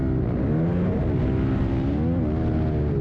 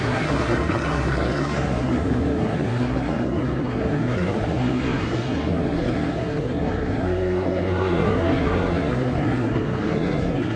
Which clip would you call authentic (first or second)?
first